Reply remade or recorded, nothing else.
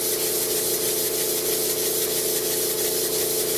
recorded